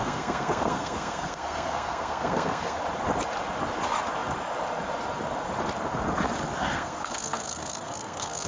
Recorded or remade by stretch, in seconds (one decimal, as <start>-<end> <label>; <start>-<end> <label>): 0.0-2.8 remade; 2.8-6.6 recorded; 6.6-8.5 remade